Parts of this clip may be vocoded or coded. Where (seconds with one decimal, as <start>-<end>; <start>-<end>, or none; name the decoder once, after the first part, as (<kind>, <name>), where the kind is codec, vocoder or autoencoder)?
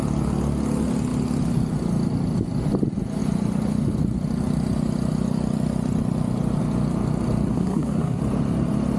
7.5-8.2 (codec, SNAC)